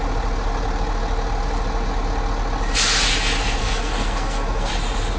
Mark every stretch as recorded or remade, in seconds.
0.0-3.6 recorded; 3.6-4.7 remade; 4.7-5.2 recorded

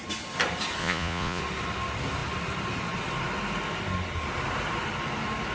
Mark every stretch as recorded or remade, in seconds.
0.0-0.8 recorded; 0.8-1.4 remade; 1.4-5.5 recorded